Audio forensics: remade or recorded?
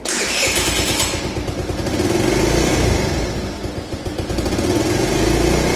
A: recorded